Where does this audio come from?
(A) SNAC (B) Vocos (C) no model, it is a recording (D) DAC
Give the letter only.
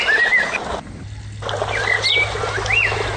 C